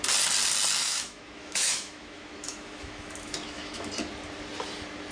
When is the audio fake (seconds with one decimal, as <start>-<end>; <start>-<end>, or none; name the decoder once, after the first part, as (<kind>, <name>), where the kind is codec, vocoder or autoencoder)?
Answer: 0.8-3.9 (autoencoder, DAC-VAE)

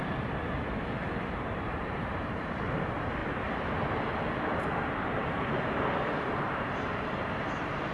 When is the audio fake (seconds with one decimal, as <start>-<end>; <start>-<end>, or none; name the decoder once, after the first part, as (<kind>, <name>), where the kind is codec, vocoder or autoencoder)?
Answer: 0.0-0.4 (vocoder, BigVGAN v2); 1.3-3.2; 6.4-7.9

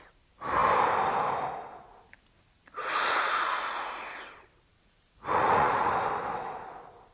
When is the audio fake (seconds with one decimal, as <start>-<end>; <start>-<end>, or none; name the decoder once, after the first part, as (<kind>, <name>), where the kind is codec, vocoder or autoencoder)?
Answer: 2.8-4.1 (vocoder, Vocos); 4.7-5.9

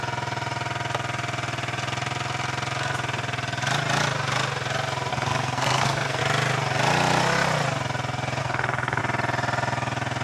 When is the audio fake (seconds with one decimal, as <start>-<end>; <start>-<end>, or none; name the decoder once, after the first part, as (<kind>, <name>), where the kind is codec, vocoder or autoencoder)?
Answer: 5.1-6.2 (codec, SNAC); 8.4-9.0

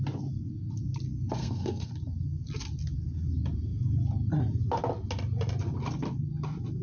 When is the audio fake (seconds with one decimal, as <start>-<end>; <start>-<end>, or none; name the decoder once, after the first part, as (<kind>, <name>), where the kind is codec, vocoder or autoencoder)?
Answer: 1.4-1.9 (codec, SNAC)

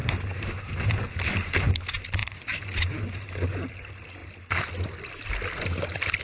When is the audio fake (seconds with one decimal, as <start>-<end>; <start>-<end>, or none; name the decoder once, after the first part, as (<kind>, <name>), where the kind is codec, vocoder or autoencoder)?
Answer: 0.0-0.7 (vocoder, BigVGAN v2); 2.2-3.7

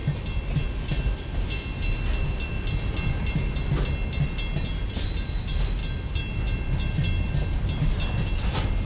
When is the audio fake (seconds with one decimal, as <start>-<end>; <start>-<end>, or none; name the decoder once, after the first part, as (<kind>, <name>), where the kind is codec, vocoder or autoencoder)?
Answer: none